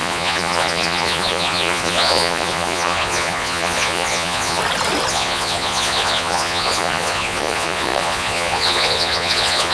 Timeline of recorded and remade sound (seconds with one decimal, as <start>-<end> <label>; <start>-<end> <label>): 0.0-4.6 remade; 4.6-5.1 recorded; 5.1-9.7 remade